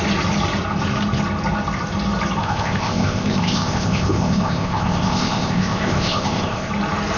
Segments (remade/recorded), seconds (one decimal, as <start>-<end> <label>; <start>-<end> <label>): 0.0-2.4 recorded; 2.4-6.7 remade; 6.7-7.2 recorded